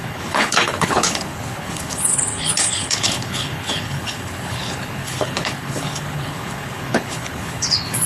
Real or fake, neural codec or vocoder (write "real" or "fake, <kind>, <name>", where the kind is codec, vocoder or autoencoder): fake, codec, HILCodec